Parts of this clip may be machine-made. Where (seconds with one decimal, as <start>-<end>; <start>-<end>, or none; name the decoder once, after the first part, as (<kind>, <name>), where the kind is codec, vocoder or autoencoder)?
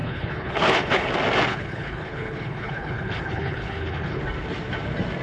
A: 0.0-1.1 (codec, HILCodec); 1.5-4.2